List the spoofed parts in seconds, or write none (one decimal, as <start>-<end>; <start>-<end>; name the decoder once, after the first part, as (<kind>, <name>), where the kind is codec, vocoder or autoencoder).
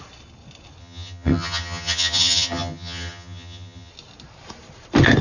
0.8-3.9 (vocoder, HiFi-GAN)